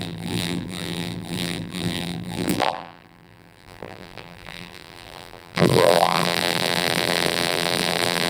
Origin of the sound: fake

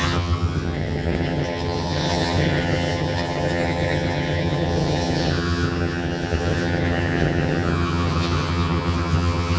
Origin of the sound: fake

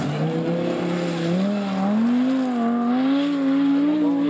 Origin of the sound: real